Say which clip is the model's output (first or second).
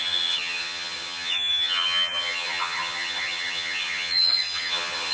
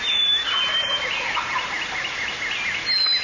first